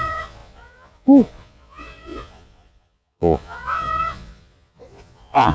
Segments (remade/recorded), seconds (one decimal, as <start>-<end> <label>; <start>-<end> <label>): 0.0-5.5 remade